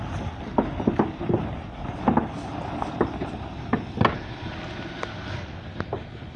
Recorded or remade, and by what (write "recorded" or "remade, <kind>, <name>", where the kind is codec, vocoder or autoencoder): recorded